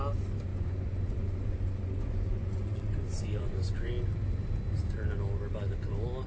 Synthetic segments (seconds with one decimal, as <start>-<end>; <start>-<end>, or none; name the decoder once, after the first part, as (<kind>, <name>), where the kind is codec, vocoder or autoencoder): 0.5-3.9 (vocoder, Vocos)